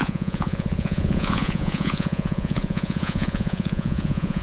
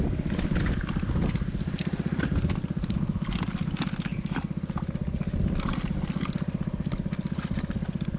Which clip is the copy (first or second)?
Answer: first